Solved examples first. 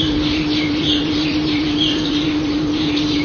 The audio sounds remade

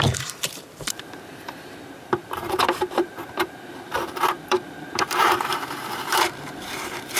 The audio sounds remade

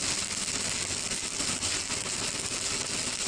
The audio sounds recorded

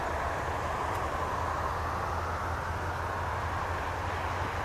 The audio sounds recorded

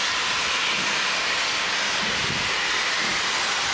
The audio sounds remade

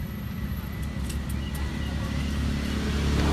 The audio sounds recorded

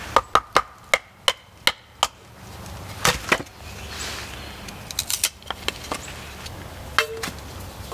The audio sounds recorded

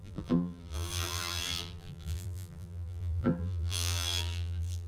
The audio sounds remade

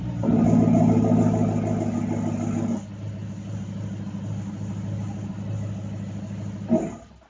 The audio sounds recorded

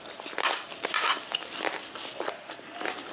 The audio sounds recorded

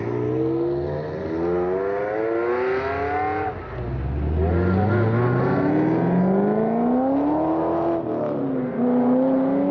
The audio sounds recorded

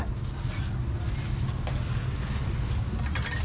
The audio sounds recorded